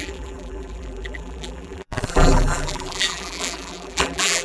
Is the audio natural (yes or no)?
no